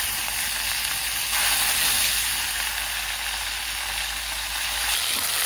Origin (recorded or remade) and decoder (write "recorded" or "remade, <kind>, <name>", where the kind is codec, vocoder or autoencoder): recorded